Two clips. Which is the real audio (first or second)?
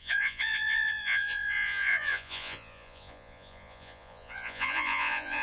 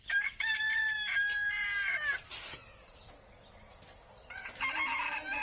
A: second